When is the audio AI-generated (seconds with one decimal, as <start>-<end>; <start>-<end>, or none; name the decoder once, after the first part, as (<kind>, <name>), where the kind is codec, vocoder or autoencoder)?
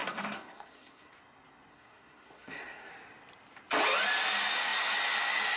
0.0-1.1 (codec, SNAC); 1.7-2.9